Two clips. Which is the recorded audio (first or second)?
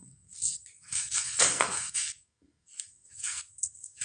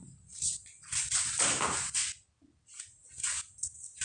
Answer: second